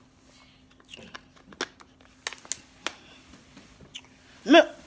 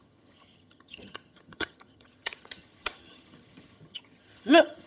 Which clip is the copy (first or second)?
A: second